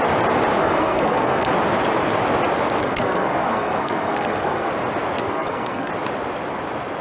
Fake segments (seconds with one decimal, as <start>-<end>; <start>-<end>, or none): 0.6-1.5; 2.8-4.7; 5.2-5.9